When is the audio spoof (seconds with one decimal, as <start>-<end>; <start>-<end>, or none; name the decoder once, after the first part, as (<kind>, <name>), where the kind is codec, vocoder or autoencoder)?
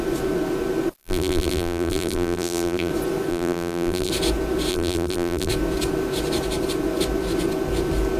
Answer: 1.0-2.9 (vocoder, BigVGAN v2); 3.3-4.1; 4.7-5.5